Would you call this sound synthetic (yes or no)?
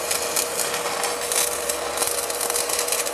no